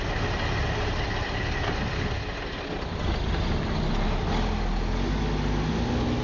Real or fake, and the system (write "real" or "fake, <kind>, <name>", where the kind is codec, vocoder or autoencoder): real